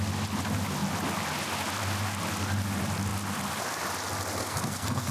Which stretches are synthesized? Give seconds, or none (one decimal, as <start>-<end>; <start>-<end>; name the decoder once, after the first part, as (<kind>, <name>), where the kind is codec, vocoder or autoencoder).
4.4-5.1 (codec, SNAC)